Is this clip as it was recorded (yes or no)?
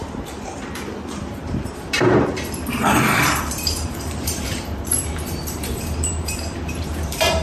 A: no